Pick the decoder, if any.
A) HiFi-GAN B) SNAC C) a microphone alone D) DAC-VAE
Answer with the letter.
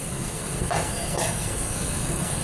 B